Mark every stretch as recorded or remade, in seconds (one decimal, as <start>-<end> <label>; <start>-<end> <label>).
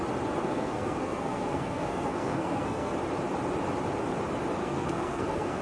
0.0-0.4 recorded; 0.4-2.9 remade; 2.9-4.6 recorded; 4.6-5.6 remade